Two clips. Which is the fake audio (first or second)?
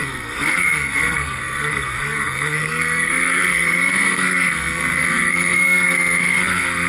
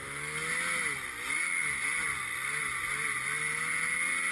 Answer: first